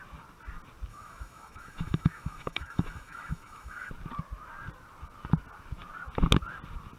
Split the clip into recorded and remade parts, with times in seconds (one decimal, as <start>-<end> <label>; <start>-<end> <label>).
0.0-0.9 recorded; 0.9-3.9 remade; 3.9-7.0 recorded